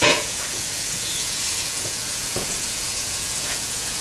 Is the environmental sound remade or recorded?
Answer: remade